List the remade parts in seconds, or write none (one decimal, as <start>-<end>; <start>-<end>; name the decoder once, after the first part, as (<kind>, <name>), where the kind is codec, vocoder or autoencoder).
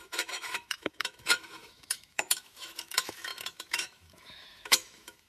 0.0-5.3 (autoencoder, DAC-VAE)